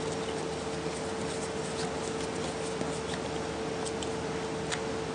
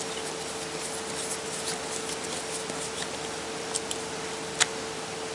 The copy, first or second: second